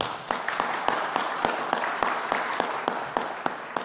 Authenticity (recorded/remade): recorded